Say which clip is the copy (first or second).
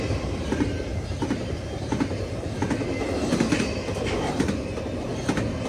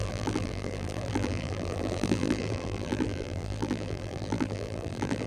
second